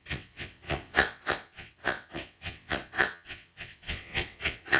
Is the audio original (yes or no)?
no